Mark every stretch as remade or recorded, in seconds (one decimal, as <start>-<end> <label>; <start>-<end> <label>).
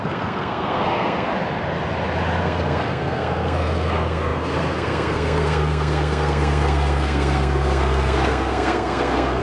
0.0-1.3 remade; 1.3-2.4 recorded; 2.4-9.4 remade